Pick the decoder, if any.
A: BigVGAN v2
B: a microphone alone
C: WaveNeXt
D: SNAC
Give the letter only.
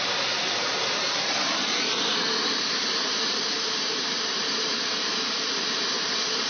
A